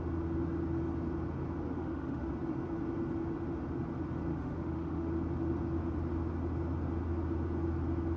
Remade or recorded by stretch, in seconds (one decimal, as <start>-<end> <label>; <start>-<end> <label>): 0.0-1.8 recorded; 1.8-2.3 remade; 2.3-4.3 recorded; 4.3-5.1 remade; 5.1-8.2 recorded